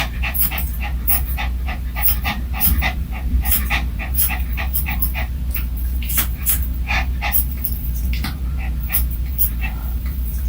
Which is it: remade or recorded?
remade